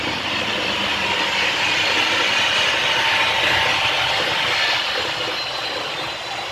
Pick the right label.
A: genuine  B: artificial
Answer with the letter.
A